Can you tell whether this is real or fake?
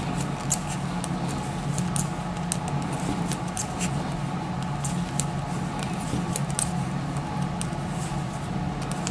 real